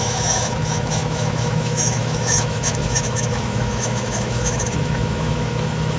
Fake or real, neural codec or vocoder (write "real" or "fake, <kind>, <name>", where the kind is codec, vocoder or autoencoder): fake, autoencoder, DAC-VAE